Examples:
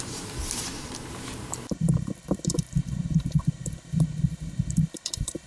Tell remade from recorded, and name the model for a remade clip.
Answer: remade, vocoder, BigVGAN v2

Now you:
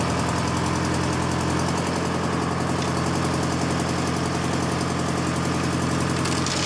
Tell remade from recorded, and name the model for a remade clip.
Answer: recorded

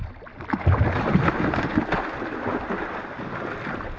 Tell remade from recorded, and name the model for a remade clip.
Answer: recorded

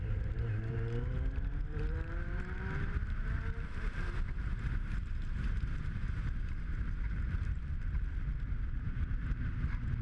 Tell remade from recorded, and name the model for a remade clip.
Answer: remade, vocoder, BigVGAN v2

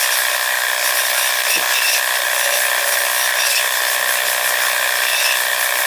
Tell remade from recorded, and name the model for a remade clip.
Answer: recorded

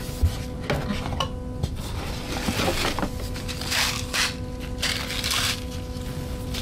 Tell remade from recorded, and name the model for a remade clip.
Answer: recorded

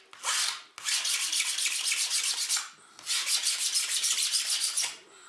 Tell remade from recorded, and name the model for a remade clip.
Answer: recorded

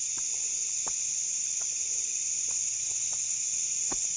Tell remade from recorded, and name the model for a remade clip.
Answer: recorded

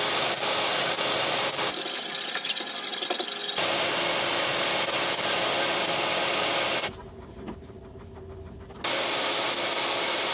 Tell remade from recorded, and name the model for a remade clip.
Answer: recorded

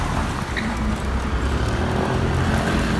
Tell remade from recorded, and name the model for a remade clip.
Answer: recorded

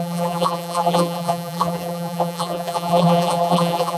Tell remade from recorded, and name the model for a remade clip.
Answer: remade, vocoder, BigVGAN v2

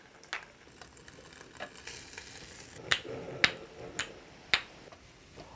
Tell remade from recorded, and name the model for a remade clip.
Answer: recorded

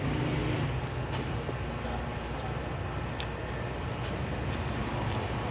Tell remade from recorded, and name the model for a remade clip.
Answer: recorded